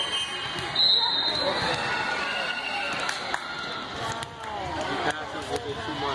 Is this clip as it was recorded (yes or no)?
yes